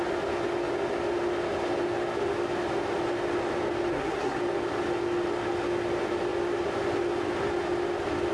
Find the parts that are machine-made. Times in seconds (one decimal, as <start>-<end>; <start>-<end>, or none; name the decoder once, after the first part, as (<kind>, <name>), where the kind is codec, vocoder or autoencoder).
3.9-4.4 (codec, SNAC)